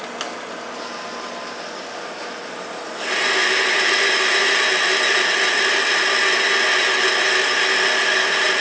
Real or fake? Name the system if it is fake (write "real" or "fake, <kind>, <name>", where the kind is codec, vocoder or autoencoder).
real